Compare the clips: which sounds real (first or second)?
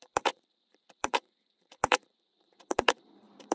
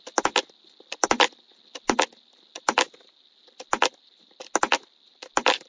second